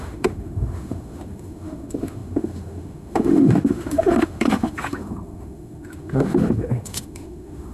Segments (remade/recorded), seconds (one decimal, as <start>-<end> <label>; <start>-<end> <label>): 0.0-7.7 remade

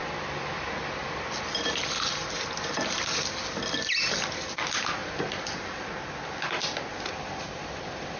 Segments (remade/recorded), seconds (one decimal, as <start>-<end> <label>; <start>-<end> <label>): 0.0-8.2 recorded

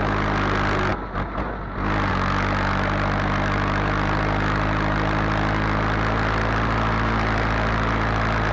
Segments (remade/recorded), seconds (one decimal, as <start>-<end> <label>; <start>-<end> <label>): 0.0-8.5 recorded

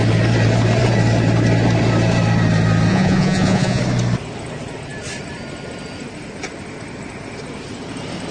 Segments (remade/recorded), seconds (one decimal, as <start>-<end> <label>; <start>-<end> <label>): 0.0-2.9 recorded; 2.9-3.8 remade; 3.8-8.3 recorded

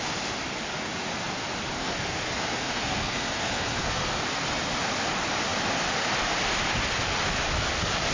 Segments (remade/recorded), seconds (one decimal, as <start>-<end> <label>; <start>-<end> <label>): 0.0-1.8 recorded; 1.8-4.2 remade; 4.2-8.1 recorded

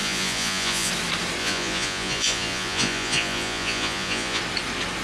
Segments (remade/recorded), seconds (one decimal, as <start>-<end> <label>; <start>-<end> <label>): 0.0-0.9 remade; 0.9-1.4 recorded; 1.4-4.4 remade; 4.4-5.0 recorded

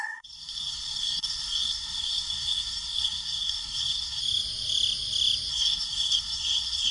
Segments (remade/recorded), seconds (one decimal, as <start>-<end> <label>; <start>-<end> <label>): 0.0-4.2 remade; 4.2-5.5 recorded; 5.5-6.9 remade

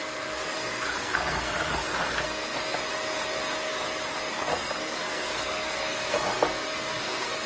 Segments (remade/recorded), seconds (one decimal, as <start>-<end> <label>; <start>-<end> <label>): 0.0-2.6 remade; 2.6-4.3 recorded; 4.3-7.5 remade